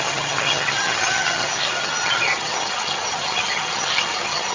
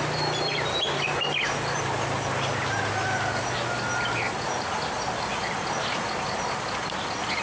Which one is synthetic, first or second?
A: first